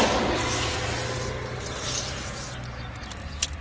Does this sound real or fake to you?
real